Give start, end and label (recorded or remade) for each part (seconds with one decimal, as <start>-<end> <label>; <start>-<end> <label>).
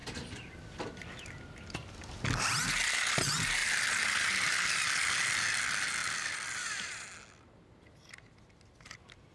0.0-9.3 recorded